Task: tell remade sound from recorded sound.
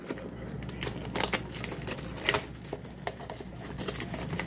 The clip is recorded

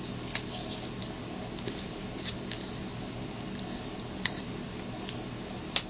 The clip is recorded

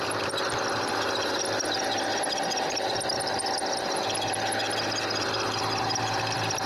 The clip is recorded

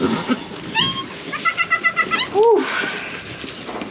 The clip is recorded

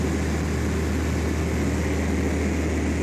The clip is recorded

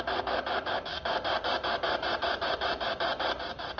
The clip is recorded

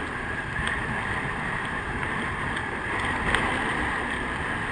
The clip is recorded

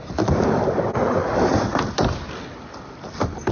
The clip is recorded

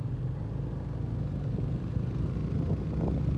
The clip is recorded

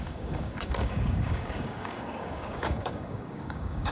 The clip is remade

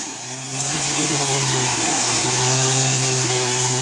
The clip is remade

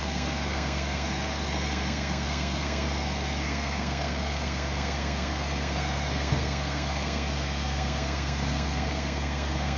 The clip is remade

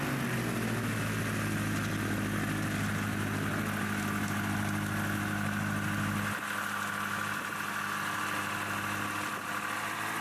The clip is recorded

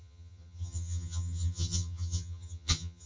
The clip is remade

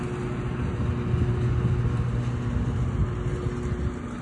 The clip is recorded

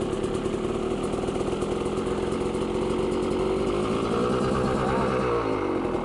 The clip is recorded